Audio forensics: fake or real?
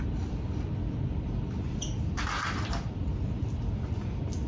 fake